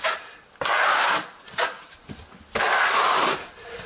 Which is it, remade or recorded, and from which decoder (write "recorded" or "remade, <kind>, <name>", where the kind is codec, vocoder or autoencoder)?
recorded